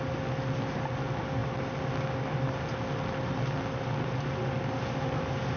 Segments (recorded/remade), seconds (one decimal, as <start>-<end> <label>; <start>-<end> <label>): 0.0-5.6 recorded